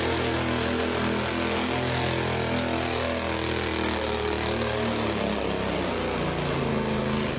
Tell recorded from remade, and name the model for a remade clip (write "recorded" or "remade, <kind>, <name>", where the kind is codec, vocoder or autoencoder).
recorded